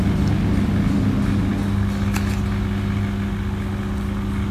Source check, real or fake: real